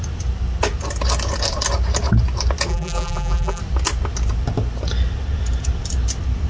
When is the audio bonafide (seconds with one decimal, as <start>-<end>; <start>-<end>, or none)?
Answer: 0.0-2.7; 3.6-6.5

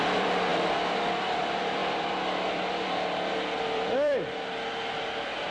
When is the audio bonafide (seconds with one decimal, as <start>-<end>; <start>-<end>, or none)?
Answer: none

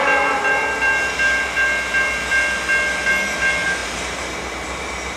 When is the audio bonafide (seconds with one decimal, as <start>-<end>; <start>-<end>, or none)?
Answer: 0.0-3.8; 4.8-5.2

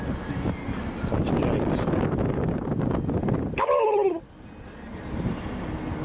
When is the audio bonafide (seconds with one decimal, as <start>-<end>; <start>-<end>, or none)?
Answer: 0.0-3.2; 3.7-6.0